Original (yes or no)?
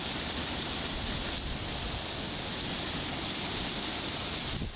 yes